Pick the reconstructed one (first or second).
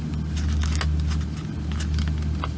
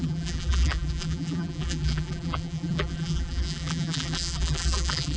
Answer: second